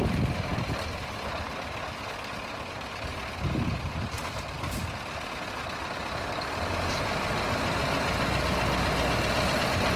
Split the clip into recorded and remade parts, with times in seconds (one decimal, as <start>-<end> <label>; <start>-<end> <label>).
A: 0.0-5.6 recorded; 5.6-6.9 remade; 6.9-10.0 recorded